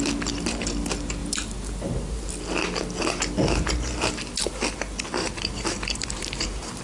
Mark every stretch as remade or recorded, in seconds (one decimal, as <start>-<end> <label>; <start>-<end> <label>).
0.0-1.2 recorded; 1.2-2.3 remade; 2.3-5.2 recorded; 5.2-6.8 remade